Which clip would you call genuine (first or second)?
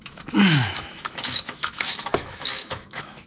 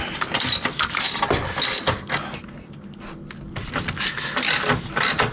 second